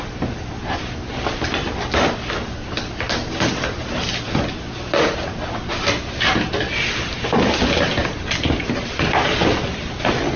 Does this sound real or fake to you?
real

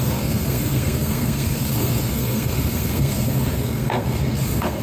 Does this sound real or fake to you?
fake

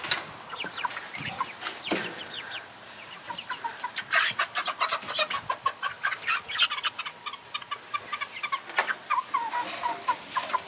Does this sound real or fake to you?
real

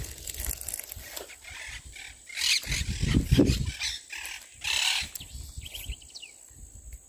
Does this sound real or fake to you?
real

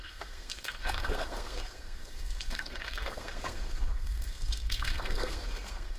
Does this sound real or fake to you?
fake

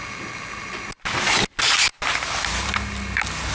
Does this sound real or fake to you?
real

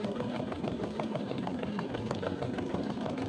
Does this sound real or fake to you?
fake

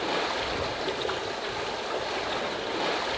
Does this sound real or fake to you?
real